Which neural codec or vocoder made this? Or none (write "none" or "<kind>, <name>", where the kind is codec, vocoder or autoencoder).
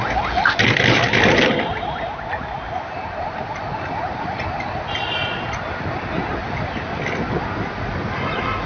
none